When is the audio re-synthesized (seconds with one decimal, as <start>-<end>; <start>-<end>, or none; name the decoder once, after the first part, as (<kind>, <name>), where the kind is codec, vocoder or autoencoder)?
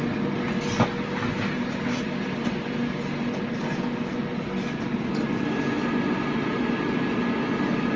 none